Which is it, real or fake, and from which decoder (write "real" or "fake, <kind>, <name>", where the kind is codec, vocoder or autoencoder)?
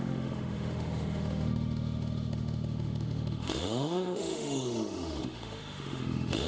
fake, autoencoder, DAC-VAE